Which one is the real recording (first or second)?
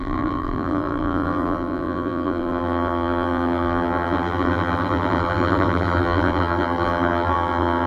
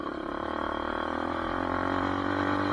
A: second